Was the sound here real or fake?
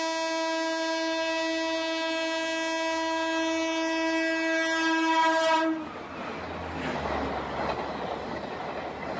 real